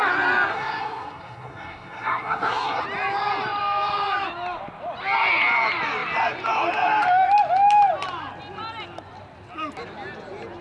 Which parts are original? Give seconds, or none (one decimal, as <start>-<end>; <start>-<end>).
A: 0.0-0.5; 2.8-10.6